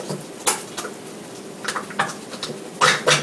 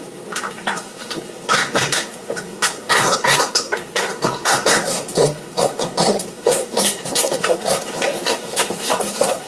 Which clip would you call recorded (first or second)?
first